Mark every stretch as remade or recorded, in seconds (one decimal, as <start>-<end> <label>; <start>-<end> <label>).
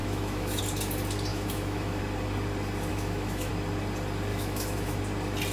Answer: 0.0-0.6 remade; 0.6-1.3 recorded; 1.3-2.0 remade; 2.0-2.9 recorded; 2.9-3.5 remade; 3.5-4.3 recorded; 4.3-5.0 remade; 5.0-5.5 recorded